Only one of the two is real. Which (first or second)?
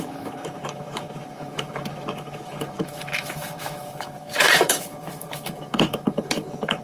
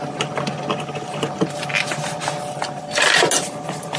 second